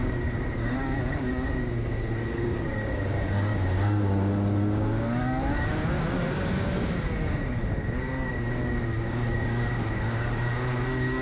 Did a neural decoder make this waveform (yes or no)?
yes